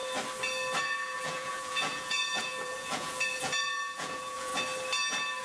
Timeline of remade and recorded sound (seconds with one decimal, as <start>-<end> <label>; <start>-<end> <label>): 0.0-0.8 recorded; 0.8-4.5 remade; 4.5-5.4 recorded